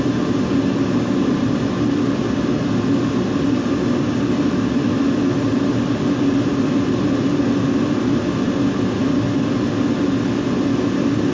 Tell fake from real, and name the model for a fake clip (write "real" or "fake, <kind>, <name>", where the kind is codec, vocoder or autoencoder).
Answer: real